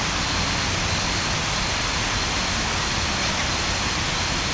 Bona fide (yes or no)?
yes